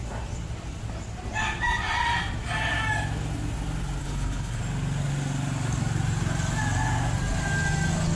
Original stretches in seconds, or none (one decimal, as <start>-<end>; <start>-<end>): 0.0-4.0; 4.6-8.2